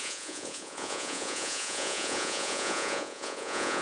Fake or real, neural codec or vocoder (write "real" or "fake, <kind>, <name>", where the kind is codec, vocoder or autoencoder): fake, vocoder, Vocos